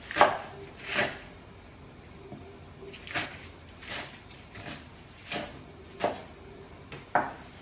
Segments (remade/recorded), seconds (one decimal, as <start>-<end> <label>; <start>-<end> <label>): 0.0-3.3 recorded; 3.3-4.8 remade; 4.8-7.6 recorded